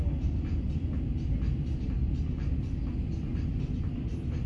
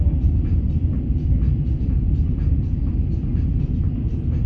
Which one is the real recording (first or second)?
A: first